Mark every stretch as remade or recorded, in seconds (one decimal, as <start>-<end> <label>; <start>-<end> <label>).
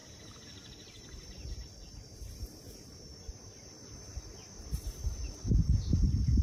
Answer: 0.0-6.4 recorded